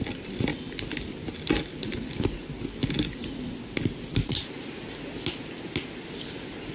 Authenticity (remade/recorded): recorded